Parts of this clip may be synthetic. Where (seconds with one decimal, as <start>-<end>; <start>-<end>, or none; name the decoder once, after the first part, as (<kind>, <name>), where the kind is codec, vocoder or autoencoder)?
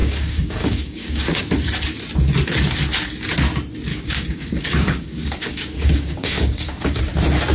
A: 0.0-1.4 (codec, DAC); 3.9-7.0